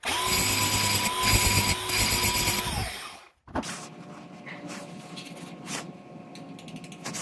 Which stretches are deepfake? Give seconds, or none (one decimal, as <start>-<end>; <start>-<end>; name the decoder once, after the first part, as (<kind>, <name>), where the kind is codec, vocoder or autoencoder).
none